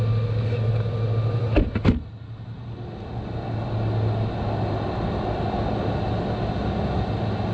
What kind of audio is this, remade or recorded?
recorded